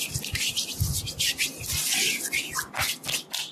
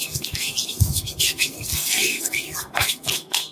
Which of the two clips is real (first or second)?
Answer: first